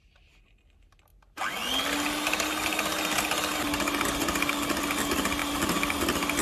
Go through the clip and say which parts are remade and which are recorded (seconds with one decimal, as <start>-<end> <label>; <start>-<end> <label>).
0.0-6.4 recorded